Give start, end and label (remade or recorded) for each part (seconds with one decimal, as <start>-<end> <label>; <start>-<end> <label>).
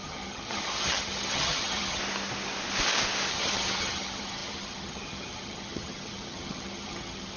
0.0-2.0 remade; 2.0-3.3 recorded; 3.3-7.4 remade